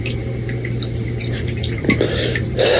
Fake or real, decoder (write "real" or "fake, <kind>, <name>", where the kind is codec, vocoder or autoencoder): fake, vocoder, BigVGAN v2